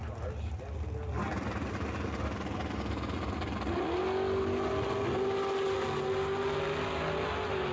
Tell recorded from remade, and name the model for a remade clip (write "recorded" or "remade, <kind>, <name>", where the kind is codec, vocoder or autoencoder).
recorded